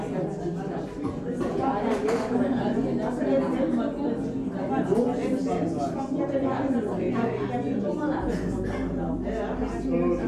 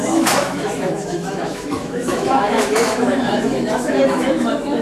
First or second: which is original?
first